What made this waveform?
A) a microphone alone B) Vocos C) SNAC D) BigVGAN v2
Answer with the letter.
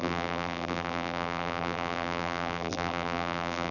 D